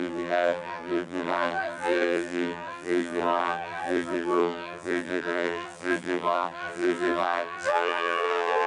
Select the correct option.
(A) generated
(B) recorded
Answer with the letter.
A